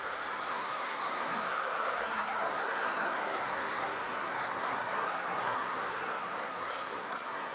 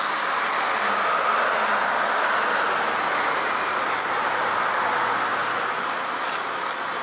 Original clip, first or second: second